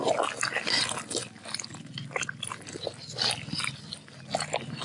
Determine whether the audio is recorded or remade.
recorded